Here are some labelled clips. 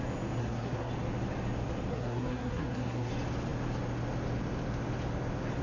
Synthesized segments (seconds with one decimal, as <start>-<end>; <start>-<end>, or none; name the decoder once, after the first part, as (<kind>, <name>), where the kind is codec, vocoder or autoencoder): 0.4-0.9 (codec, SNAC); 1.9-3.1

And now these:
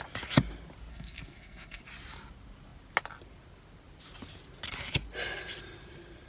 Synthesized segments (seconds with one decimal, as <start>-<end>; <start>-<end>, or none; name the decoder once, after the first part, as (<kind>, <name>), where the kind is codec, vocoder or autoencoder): 0.9-1.8 (codec, SNAC)

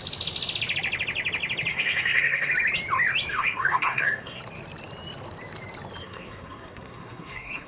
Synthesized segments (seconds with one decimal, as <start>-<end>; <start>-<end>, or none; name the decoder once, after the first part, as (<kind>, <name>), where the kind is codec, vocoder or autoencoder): 1.7-2.5 (codec, SNAC); 3.3-4.4; 6.0-7.7